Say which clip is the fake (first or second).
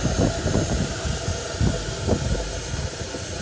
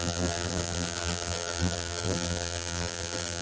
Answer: second